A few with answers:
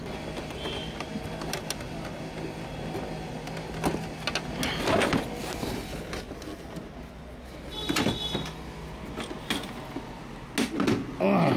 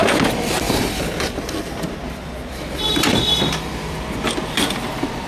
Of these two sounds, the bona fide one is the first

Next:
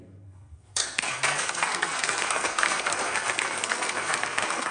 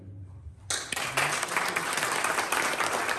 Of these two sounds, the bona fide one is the second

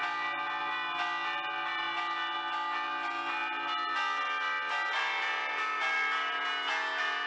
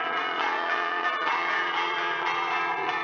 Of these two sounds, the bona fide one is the first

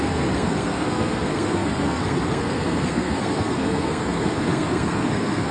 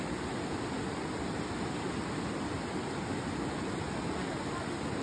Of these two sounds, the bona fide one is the second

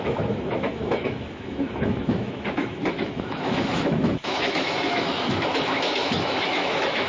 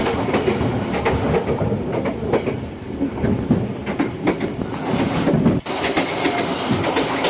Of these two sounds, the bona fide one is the second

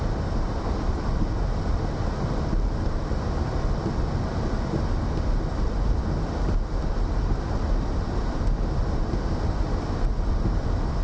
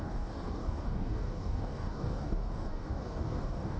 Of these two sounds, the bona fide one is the first